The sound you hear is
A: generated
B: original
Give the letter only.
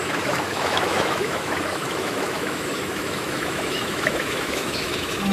A